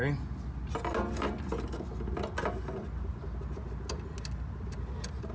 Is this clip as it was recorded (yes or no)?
yes